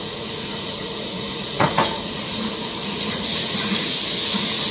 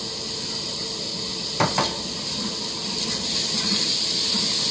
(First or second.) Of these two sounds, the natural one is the second